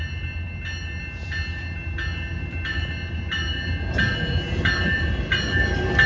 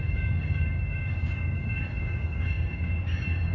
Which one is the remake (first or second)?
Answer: second